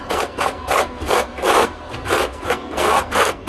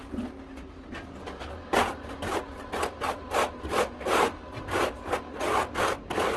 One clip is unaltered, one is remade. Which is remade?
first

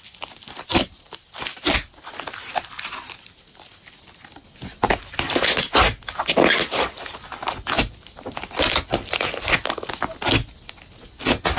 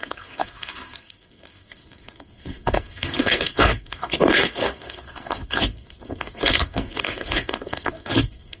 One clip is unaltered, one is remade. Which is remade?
second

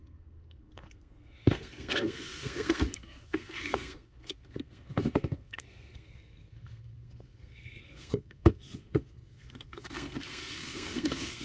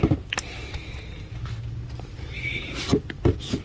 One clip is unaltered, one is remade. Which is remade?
first